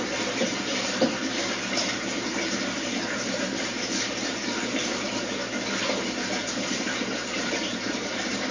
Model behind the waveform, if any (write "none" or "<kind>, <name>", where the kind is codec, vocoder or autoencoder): vocoder, BigVGAN v2